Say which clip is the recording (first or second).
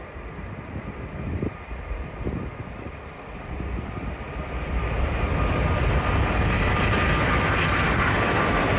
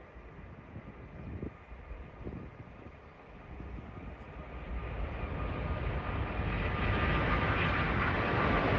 second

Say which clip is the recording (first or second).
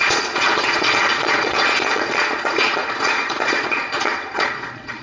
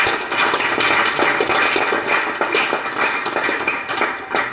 second